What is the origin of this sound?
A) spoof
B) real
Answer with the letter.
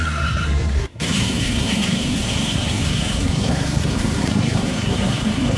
A